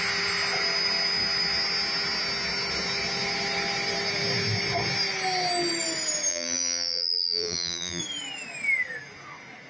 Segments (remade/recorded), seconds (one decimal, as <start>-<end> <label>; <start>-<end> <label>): 0.0-6.3 recorded; 6.3-8.0 remade; 8.0-9.7 recorded